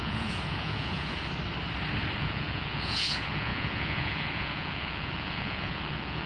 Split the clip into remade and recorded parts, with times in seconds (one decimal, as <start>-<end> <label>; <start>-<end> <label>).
0.0-1.2 remade; 1.2-2.2 recorded; 2.2-6.3 remade